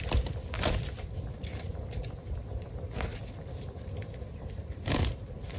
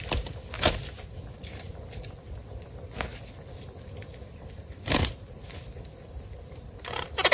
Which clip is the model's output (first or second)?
first